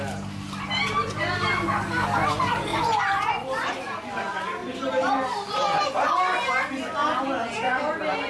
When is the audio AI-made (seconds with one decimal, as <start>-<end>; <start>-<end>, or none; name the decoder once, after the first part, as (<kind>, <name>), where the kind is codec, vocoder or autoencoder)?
4.6-6.5 (vocoder, BigVGAN v2)